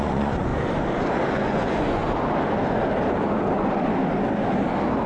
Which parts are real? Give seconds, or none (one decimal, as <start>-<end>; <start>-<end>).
0.5-1.3; 2.0-5.1